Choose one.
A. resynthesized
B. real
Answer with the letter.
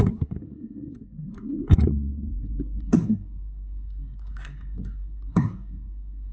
A